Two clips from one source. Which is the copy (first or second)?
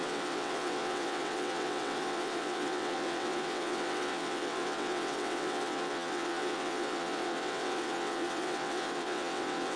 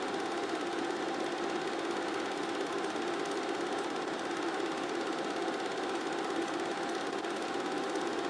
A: first